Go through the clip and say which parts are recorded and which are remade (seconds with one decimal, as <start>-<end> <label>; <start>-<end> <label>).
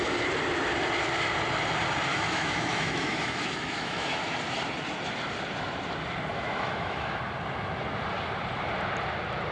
0.0-2.1 recorded; 2.1-4.2 remade; 4.2-6.3 recorded; 6.3-7.2 remade; 7.2-9.5 recorded